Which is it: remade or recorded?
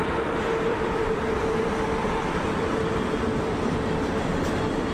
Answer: remade